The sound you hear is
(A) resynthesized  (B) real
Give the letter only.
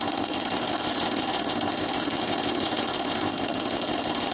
A